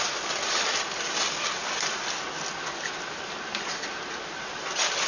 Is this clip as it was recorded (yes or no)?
yes